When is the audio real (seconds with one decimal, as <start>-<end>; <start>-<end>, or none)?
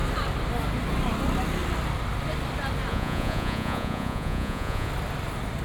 0.0-2.9; 4.9-5.6